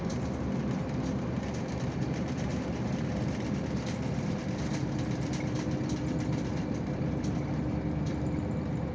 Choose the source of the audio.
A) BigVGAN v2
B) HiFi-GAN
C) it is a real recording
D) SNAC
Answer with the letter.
A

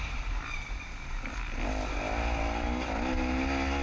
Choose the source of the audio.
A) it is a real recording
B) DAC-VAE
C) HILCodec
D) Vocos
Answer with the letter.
A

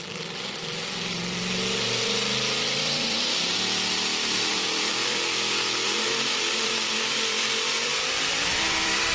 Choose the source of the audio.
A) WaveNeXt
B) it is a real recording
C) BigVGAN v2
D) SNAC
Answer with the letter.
C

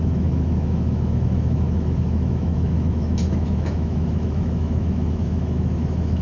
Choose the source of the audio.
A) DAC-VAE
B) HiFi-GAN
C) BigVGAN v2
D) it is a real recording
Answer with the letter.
A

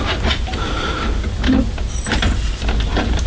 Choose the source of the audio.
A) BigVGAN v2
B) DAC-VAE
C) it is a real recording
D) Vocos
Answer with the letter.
C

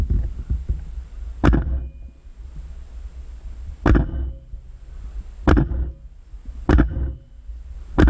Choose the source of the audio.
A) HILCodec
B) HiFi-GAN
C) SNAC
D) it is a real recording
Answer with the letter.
D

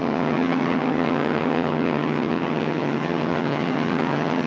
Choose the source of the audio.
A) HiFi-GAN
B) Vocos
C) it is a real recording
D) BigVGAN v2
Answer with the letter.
A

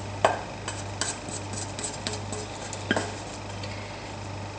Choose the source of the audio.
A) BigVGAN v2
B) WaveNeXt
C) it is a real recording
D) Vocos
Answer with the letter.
C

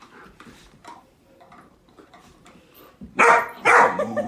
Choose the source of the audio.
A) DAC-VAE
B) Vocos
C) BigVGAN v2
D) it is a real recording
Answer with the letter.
C